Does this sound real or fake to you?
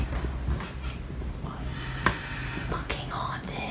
real